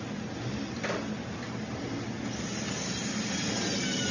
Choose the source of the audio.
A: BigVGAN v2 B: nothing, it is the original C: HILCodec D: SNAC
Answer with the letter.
B